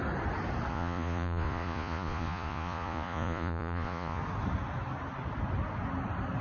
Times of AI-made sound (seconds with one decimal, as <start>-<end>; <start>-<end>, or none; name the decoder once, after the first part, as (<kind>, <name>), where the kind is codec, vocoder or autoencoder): 0.7-4.2 (vocoder, Vocos)